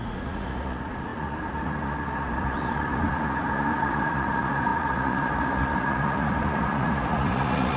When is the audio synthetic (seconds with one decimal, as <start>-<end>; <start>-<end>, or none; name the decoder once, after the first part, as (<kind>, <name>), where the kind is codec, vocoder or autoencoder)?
0.0-7.8 (vocoder, Vocos)